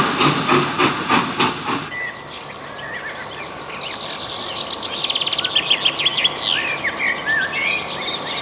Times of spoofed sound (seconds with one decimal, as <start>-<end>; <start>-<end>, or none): none